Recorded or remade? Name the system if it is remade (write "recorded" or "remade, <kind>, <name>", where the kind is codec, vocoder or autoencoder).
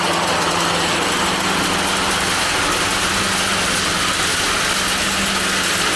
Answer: recorded